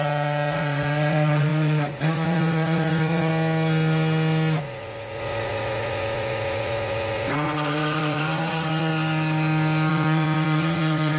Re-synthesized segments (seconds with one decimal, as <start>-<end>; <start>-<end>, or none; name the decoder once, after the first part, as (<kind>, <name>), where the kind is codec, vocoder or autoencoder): 0.0-3.3 (vocoder, Vocos); 4.6-8.9; 9.9-11.2